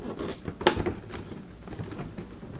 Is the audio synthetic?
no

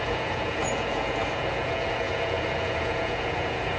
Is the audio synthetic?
yes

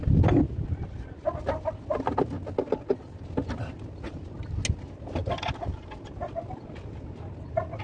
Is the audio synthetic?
no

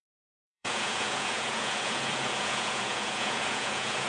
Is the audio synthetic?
yes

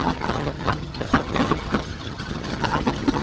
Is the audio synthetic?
yes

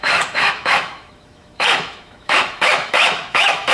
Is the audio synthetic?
yes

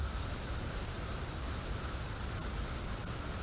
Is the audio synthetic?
no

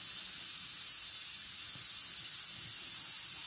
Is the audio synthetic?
no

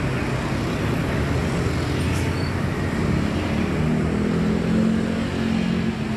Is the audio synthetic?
no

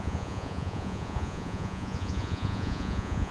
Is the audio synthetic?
yes